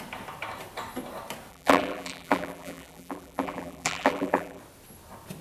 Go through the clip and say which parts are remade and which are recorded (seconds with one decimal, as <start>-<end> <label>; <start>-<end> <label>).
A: 0.0-1.5 recorded; 1.5-4.6 remade; 4.6-5.4 recorded